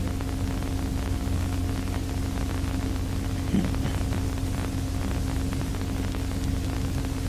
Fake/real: real